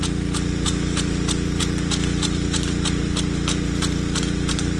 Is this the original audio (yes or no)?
yes